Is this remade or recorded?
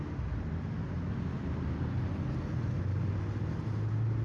recorded